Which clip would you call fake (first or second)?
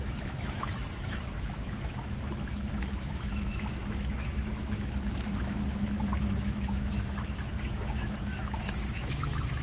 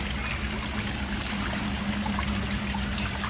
first